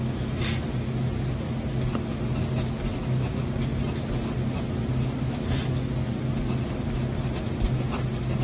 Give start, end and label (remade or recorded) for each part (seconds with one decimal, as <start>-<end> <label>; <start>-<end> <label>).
0.0-8.4 recorded